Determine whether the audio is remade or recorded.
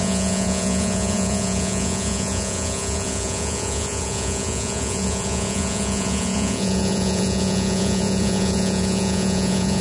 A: remade